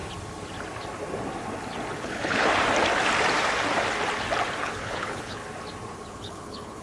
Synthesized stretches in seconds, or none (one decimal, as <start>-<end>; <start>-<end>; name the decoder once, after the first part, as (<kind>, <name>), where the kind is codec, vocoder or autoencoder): 1.9-2.5 (codec, HILCodec); 4.6-5.4; 6.1-6.8